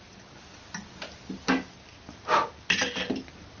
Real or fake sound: real